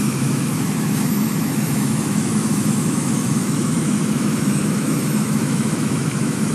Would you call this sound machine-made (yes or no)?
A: yes